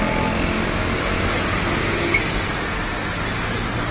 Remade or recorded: recorded